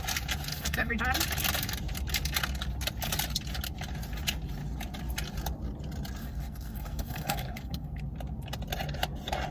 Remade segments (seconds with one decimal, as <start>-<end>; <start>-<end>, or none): 0.5-1.0; 6.2-8.0